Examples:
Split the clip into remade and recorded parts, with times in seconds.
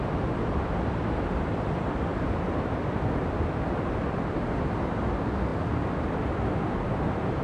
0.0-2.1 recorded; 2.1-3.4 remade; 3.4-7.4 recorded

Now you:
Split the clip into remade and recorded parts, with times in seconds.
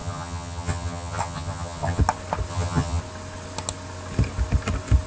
0.0-2.0 remade; 2.0-2.5 recorded; 2.5-3.0 remade; 3.0-5.1 recorded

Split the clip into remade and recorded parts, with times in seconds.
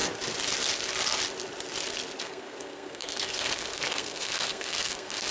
0.0-2.2 recorded; 2.2-5.3 remade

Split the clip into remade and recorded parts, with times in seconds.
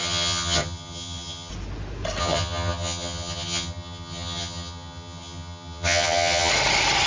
0.0-1.5 remade; 1.5-2.2 recorded; 2.2-6.5 remade; 6.5-7.1 recorded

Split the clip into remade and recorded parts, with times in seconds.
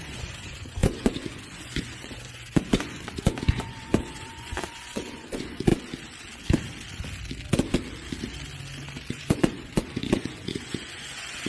0.0-5.7 remade; 5.7-9.1 recorded; 9.1-11.5 remade